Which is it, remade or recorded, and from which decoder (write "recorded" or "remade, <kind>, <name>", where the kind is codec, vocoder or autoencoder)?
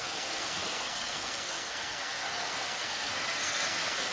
remade, codec, SNAC